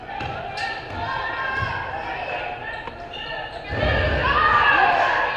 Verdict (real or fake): real